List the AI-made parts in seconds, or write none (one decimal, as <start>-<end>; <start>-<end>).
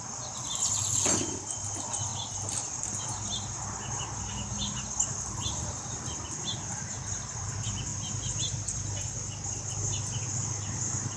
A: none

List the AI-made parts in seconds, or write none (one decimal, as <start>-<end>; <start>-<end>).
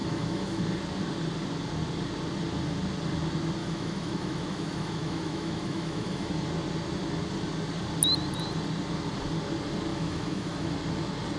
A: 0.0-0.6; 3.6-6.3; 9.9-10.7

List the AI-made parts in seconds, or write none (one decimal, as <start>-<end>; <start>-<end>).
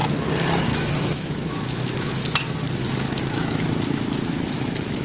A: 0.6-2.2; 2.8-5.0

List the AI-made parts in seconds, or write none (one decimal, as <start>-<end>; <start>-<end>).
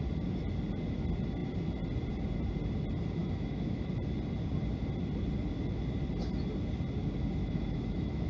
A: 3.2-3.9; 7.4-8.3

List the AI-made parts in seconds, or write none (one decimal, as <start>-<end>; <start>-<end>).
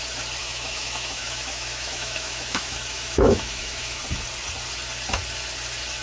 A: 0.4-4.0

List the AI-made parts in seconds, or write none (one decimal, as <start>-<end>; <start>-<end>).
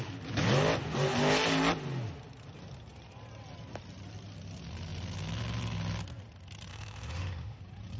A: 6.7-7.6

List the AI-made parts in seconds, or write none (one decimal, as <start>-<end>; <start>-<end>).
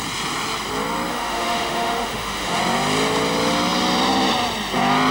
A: 1.1-2.6